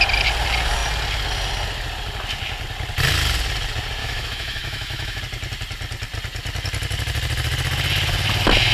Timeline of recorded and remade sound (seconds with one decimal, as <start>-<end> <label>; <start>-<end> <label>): 0.0-4.0 recorded; 4.0-5.2 remade; 5.2-8.7 recorded

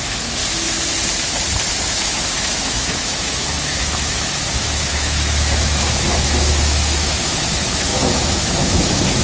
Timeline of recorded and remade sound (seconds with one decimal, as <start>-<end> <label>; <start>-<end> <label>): 0.0-0.4 remade; 0.4-2.0 recorded; 2.0-9.2 remade

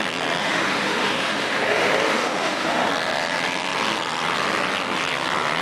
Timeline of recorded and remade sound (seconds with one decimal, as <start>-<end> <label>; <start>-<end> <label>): 0.0-0.4 recorded; 0.4-2.9 remade; 2.9-5.6 recorded

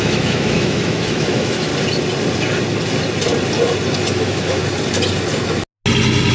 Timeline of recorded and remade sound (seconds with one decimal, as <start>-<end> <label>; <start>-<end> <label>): 0.0-1.7 remade; 1.7-4.1 recorded; 4.1-4.6 remade; 4.6-6.3 recorded

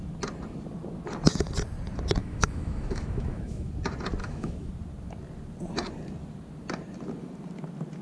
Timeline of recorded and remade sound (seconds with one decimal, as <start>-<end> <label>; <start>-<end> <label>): 0.0-2.2 recorded; 2.2-3.7 remade; 3.7-4.2 recorded; 4.2-4.7 remade; 4.7-8.0 recorded

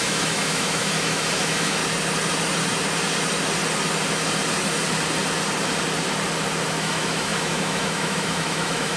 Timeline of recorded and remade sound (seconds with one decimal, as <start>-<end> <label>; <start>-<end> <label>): 0.0-1.8 remade; 1.8-6.8 recorded; 6.8-9.0 remade

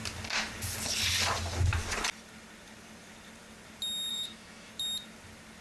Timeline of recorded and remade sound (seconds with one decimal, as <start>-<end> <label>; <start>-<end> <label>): 0.0-4.1 recorded; 4.1-4.7 remade; 4.7-5.6 recorded

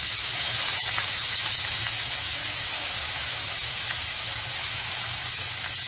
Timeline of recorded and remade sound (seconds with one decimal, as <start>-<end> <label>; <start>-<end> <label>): 0.0-5.9 remade